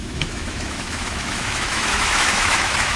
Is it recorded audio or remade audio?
remade